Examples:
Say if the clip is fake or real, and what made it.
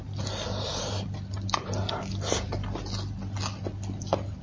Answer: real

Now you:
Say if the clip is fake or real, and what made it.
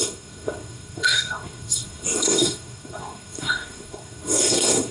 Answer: fake, codec, SNAC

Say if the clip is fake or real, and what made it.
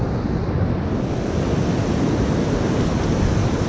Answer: real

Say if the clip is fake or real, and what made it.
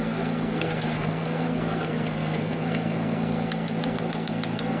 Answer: fake, codec, SNAC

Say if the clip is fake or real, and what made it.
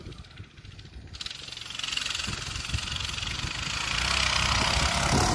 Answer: real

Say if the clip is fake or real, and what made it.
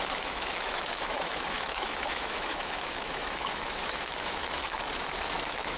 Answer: fake, autoencoder, DAC-VAE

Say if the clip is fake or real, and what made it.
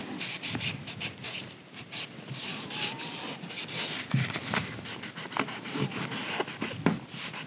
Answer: real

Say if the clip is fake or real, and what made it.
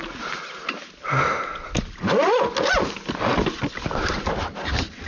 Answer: real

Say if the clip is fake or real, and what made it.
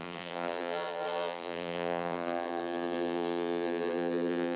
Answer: fake, vocoder, BigVGAN v2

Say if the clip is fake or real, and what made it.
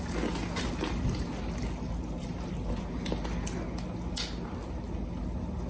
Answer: real